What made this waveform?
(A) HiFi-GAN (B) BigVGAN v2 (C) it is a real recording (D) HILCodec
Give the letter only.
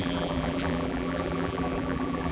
B